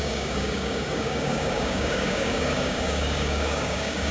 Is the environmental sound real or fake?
fake